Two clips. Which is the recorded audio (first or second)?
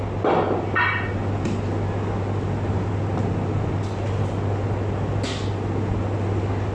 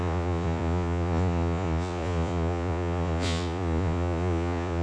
first